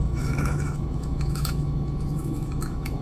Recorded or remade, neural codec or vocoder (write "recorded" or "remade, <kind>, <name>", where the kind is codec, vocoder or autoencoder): remade, autoencoder, DAC-VAE